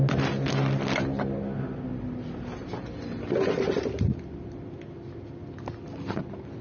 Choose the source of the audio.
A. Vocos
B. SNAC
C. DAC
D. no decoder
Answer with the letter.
D